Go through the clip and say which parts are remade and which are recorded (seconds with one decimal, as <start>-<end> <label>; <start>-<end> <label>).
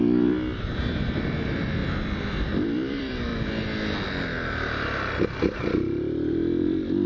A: 0.0-3.3 remade; 3.3-5.4 recorded; 5.4-7.1 remade